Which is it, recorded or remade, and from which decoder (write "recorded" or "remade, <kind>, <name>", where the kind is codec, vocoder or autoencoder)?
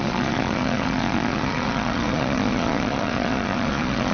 remade, vocoder, Vocos